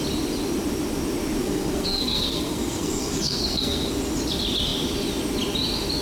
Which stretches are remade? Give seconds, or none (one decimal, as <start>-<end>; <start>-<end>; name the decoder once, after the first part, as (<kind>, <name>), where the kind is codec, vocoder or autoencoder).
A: 1.4-3.9 (codec, SNAC)